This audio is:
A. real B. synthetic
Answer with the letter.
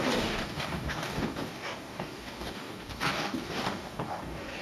B